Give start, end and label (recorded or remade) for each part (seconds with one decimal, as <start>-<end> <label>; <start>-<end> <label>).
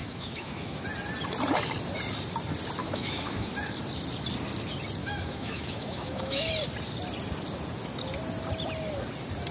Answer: 0.0-0.8 remade; 0.8-2.8 recorded; 2.8-3.5 remade; 3.5-5.0 recorded; 5.0-6.5 remade; 6.5-9.5 recorded